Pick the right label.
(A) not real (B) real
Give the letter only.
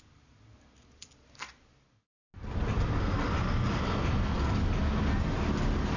B